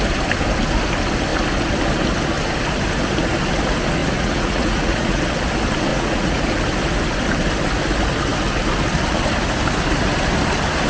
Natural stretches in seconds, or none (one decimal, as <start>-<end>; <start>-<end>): 0.0-4.0; 5.2-5.9; 6.4-10.9